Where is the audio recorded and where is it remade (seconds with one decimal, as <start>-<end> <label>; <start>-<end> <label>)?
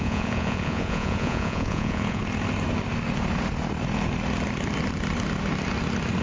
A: 0.0-2.2 remade; 2.2-6.2 recorded